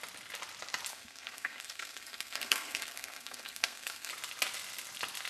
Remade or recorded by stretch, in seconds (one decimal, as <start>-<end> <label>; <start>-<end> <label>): 0.0-0.9 recorded; 0.9-4.1 remade; 4.1-5.3 recorded